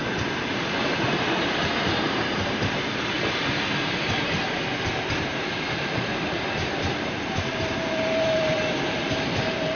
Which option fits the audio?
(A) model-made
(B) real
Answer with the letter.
A